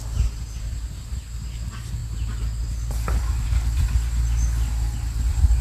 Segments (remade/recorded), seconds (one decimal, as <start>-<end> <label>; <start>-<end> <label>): 0.0-5.6 recorded